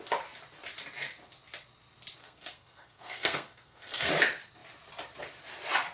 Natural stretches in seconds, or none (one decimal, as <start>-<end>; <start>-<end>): 0.0-2.2; 4.1-5.9